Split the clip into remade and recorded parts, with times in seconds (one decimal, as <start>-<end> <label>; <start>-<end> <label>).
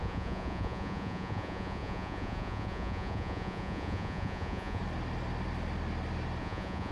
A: 0.0-4.8 remade; 4.8-6.4 recorded; 6.4-6.9 remade